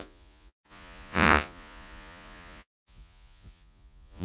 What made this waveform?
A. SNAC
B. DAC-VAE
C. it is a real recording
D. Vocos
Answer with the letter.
D